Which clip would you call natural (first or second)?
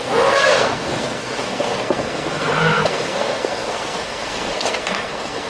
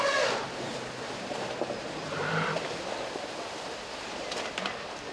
second